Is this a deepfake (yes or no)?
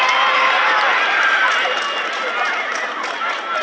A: no